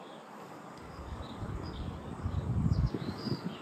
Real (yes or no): no